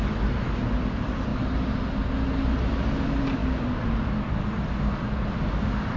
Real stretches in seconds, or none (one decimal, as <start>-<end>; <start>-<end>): 0.0-3.4; 4.9-6.0